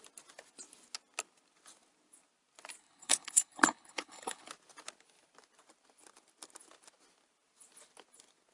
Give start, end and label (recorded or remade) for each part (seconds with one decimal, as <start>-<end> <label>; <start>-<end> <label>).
0.0-2.8 recorded; 2.8-4.5 remade; 4.5-8.5 recorded